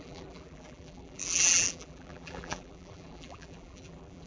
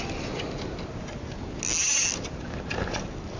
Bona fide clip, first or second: second